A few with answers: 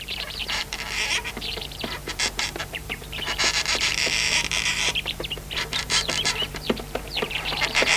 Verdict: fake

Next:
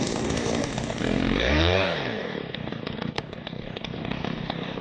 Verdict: fake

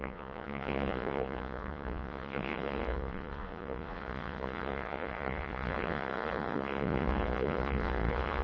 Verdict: fake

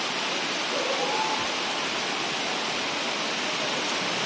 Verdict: real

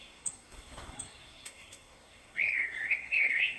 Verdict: fake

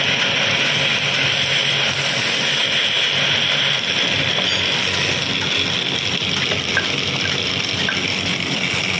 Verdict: real